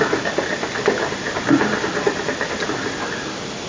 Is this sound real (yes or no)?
no